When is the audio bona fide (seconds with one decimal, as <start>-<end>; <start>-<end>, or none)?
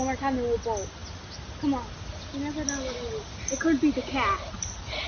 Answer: 0.0-5.1